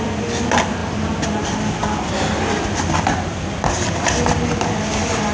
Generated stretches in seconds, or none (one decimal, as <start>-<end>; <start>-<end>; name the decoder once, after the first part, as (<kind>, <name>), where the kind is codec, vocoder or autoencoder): none